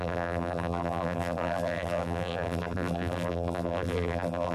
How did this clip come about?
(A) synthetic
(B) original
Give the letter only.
A